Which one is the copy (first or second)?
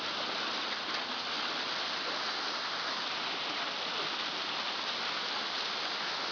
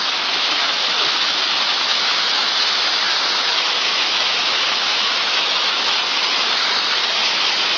second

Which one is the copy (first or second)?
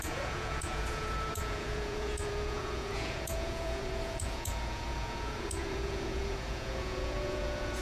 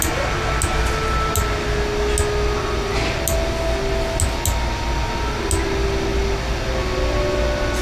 first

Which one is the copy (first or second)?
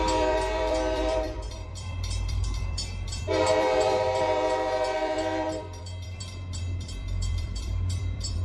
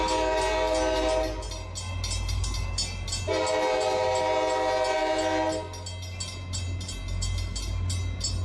first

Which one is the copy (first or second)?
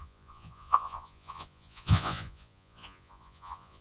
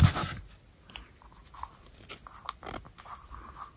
first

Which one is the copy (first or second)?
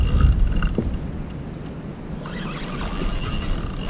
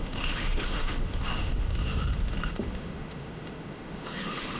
second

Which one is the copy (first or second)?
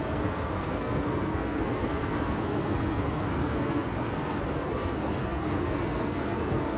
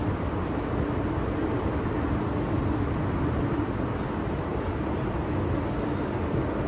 first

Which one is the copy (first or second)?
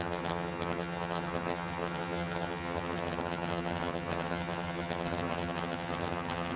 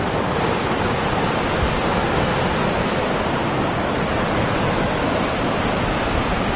first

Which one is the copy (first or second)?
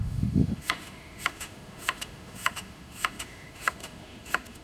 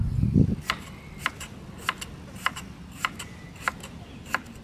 first